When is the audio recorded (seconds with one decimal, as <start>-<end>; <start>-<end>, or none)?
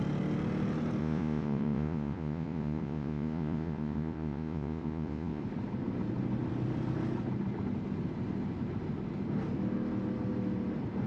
0.0-1.0; 5.4-11.1